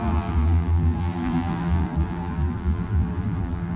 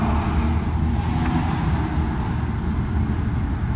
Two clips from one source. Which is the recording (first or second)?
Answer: second